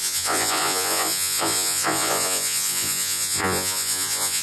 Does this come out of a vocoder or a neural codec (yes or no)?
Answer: yes